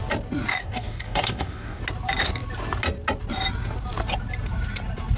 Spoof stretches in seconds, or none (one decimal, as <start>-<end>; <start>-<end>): 0.6-1.8